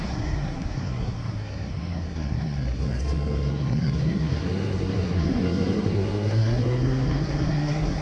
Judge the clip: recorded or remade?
remade